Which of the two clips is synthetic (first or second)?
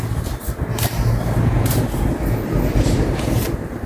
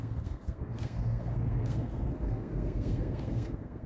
second